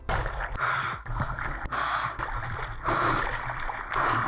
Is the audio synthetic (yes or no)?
no